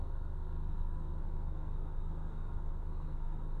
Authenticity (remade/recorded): remade